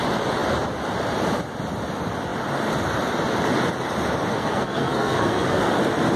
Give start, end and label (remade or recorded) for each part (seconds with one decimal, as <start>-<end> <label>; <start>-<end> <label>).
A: 0.0-4.3 recorded; 4.3-5.7 remade; 5.7-6.2 recorded